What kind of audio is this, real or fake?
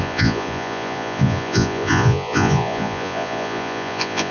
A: fake